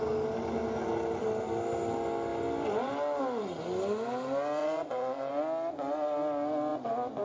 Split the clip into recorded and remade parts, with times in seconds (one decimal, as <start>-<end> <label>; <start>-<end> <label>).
0.0-4.6 recorded; 4.6-5.3 remade; 5.3-7.2 recorded